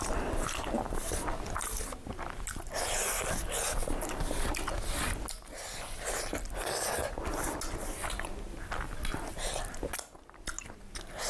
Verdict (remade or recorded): recorded